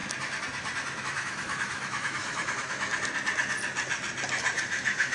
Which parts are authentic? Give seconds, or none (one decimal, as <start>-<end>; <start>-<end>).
0.0-1.0; 2.9-4.5